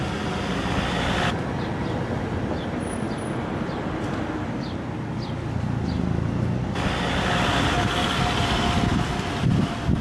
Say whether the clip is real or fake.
real